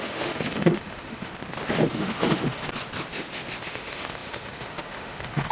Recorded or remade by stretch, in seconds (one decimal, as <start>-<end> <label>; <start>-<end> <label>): 0.0-1.3 remade; 1.3-1.9 recorded; 1.9-2.6 remade; 2.6-3.7 recorded; 3.7-5.5 remade